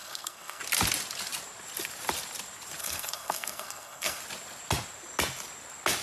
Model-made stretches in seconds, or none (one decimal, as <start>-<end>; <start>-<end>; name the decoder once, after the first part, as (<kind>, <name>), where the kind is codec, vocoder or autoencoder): 0.0-0.6 (codec, SNAC); 2.8-4.2